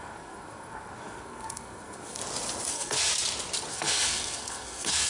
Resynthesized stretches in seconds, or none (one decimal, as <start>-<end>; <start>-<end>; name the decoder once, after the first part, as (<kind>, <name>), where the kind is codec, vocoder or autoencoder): 0.0-2.2 (codec, SNAC); 2.7-3.1; 3.7-5.1